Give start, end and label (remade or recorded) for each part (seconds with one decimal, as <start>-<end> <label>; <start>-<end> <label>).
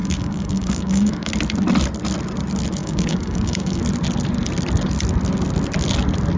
0.0-1.3 remade; 1.3-2.8 recorded; 2.8-3.8 remade; 3.8-6.4 recorded